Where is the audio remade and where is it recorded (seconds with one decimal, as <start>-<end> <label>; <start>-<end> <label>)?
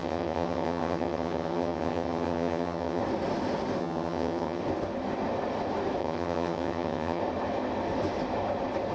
0.0-3.0 remade; 3.0-3.8 recorded; 3.8-4.6 remade; 4.6-6.0 recorded; 6.0-7.2 remade; 7.2-8.9 recorded